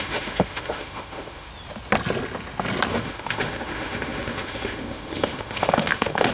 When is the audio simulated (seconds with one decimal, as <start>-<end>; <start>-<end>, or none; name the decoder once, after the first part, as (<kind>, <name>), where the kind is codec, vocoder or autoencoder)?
0.0-1.5 (autoencoder, DAC-VAE); 2.9-6.3